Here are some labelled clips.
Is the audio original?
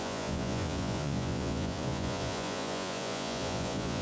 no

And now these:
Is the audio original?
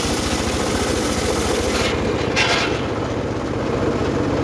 yes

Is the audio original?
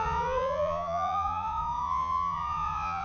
no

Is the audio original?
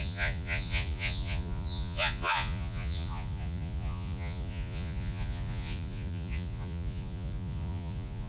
no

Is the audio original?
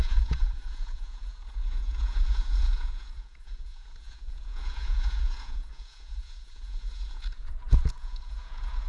no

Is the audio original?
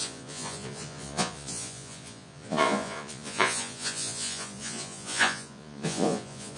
no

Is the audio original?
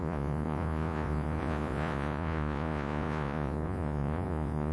no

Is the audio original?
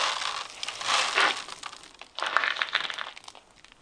yes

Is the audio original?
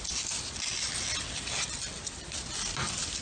yes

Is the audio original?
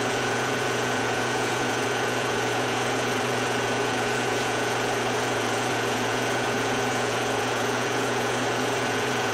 no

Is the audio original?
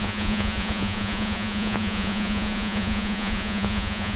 no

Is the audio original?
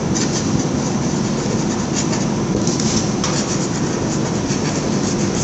yes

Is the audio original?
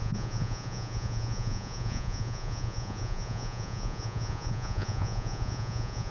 no